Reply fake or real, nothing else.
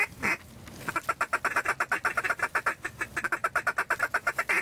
real